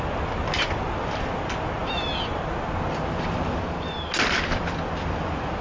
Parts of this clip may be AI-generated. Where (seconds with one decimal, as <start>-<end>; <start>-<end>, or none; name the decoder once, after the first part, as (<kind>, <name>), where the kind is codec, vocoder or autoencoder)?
none